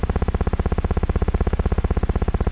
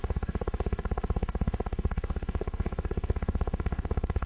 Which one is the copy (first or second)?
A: second